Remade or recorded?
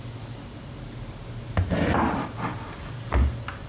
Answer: recorded